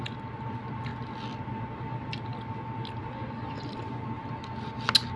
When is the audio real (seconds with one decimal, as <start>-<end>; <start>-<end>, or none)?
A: 0.0-5.2